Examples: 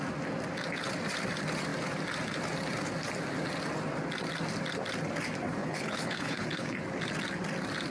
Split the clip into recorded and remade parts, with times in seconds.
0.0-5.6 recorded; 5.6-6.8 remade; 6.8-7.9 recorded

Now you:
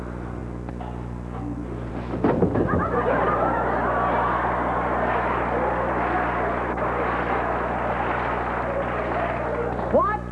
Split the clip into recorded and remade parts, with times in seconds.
0.0-10.3 recorded

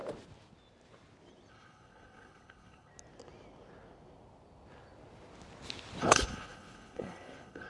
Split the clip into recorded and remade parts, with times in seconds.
0.0-1.5 recorded; 1.5-2.9 remade; 2.9-6.0 recorded; 6.0-7.7 remade

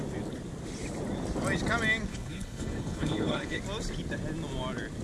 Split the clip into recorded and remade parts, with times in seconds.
0.0-2.1 recorded; 2.1-3.6 remade; 3.6-5.0 recorded

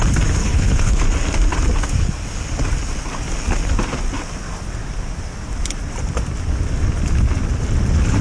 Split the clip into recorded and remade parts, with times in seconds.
0.0-0.4 recorded; 0.4-1.0 remade; 1.0-8.2 recorded

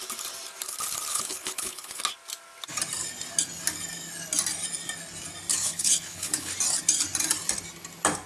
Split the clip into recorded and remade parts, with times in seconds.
0.0-1.1 recorded; 1.1-2.0 remade; 2.0-5.5 recorded; 5.5-6.5 remade; 6.5-8.3 recorded